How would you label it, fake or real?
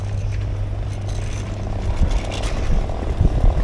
real